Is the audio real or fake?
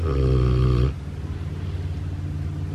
real